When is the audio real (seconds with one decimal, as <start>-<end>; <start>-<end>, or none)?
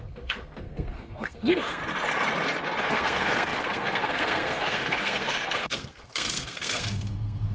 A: 1.8-2.8